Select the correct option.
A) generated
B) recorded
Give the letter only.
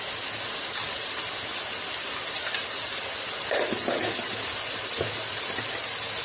B